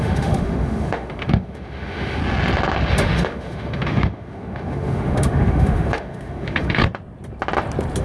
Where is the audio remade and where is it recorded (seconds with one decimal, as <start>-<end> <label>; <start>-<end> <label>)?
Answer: 0.0-2.2 remade; 2.2-2.9 recorded; 2.9-6.8 remade; 6.8-8.0 recorded